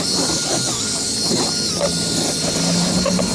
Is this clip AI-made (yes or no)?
no